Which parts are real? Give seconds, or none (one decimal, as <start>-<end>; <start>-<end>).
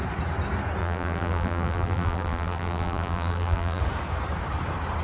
0.0-0.8; 3.8-5.0